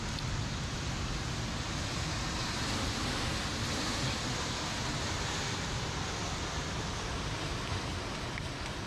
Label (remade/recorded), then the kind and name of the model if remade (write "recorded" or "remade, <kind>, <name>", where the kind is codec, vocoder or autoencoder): recorded